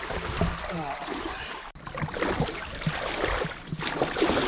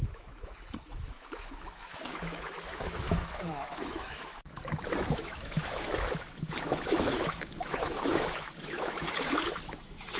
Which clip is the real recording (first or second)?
first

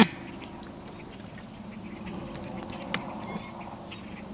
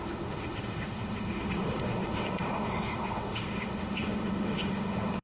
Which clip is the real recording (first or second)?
first